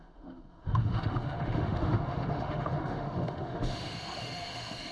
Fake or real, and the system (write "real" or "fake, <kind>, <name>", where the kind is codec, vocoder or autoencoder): fake, autoencoder, DAC-VAE